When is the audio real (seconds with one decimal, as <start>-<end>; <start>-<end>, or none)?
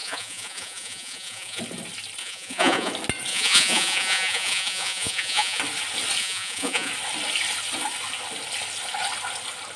1.6-2.2; 2.9-3.3; 5.6-6.2; 6.9-9.8